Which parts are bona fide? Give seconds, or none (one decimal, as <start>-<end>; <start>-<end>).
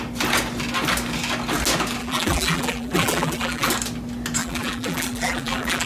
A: 0.0-2.0; 3.7-4.4